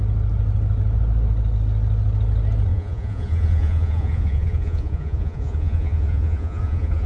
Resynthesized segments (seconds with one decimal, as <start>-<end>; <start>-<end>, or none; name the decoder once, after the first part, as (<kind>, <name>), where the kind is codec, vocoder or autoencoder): 2.7-7.1 (vocoder, Vocos)